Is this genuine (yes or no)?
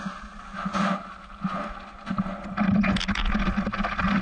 yes